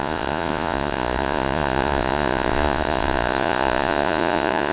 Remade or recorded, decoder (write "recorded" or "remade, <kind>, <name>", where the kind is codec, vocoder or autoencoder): remade, vocoder, Vocos